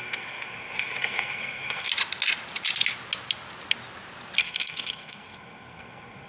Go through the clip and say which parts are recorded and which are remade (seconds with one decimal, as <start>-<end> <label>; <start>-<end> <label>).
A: 0.0-1.9 remade; 1.9-4.4 recorded; 4.4-6.3 remade